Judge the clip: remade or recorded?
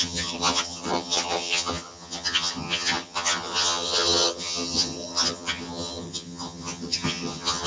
remade